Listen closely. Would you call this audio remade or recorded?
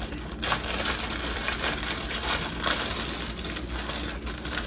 recorded